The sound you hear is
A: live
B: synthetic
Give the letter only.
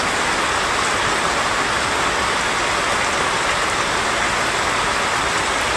A